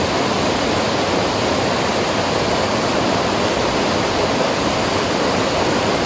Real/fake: real